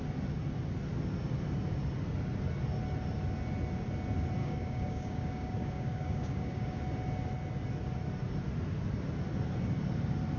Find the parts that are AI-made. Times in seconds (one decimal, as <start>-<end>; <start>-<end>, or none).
4.4-6.8